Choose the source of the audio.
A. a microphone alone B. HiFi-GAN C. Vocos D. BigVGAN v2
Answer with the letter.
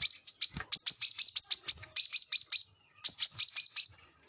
A